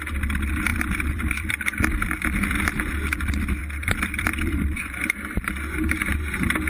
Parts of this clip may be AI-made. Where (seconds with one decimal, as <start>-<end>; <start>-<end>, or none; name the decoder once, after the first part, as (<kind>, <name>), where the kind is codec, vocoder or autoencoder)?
0.7-1.5 (vocoder, BigVGAN v2); 3.6-5.5